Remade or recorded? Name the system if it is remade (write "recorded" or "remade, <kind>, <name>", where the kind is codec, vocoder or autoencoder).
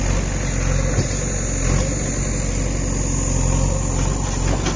recorded